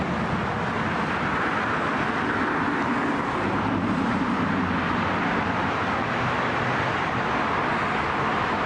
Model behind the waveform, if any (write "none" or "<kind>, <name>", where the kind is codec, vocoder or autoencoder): none